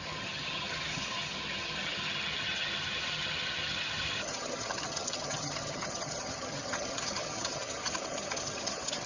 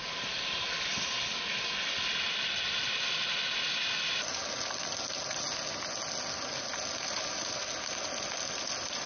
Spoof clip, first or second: first